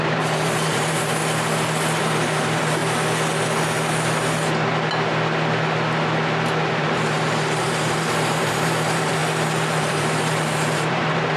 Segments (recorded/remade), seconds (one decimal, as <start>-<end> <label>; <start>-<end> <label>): 0.0-1.2 remade; 1.2-2.0 recorded; 2.0-2.8 remade; 2.8-6.7 recorded; 6.7-9.2 remade; 9.2-9.8 recorded; 9.8-11.4 remade